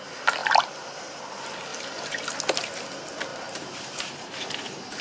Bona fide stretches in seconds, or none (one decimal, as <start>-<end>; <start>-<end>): 0.0-0.4; 1.2-3.3; 4.3-5.0